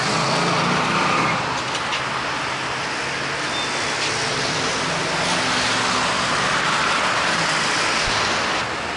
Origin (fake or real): real